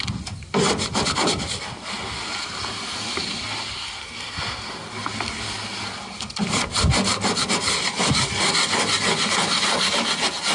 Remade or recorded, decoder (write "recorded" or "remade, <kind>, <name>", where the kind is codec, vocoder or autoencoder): recorded